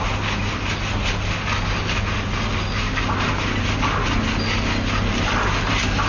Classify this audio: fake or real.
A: real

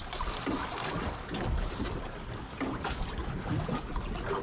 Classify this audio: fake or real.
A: real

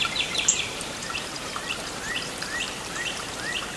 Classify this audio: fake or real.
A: fake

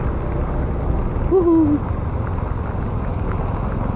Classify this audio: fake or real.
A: real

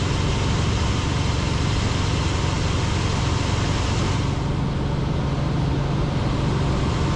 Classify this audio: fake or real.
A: real